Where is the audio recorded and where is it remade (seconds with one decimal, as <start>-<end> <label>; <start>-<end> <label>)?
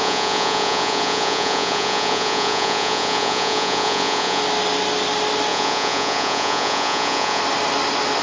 0.0-4.4 remade; 4.4-5.5 recorded; 5.5-7.4 remade; 7.4-8.2 recorded